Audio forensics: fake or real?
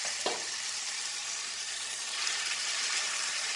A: fake